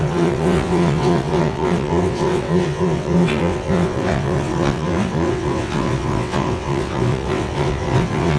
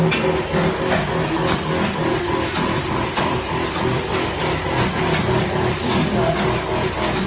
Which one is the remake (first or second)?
first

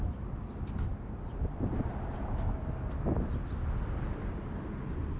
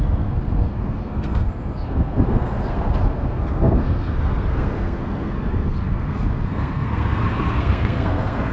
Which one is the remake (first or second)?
second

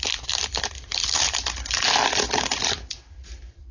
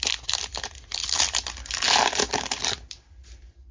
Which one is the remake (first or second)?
first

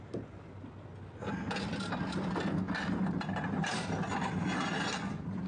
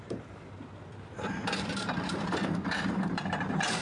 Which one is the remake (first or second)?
second